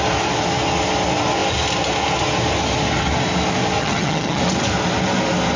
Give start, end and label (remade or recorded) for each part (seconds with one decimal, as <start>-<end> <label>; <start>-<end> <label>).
0.0-3.8 recorded; 3.8-4.4 remade; 4.4-5.6 recorded